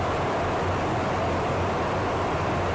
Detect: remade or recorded recorded